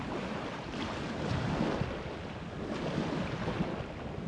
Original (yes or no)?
yes